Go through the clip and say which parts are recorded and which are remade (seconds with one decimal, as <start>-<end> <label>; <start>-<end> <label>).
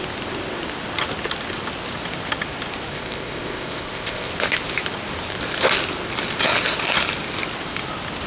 0.0-2.9 recorded; 2.9-4.3 remade; 4.3-8.3 recorded